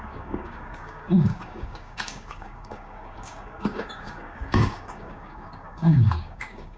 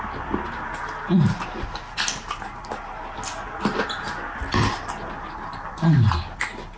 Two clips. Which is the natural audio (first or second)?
second